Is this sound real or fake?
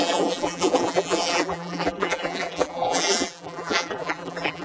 fake